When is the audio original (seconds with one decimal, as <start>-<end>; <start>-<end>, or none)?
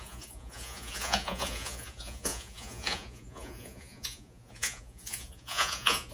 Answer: none